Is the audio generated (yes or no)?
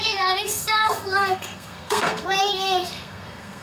yes